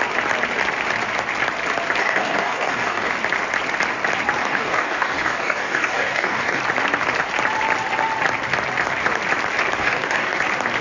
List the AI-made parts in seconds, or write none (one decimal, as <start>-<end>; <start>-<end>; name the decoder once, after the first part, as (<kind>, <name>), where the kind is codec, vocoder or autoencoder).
2.0-3.1 (codec, DAC); 4.4-6.6; 9.8-10.4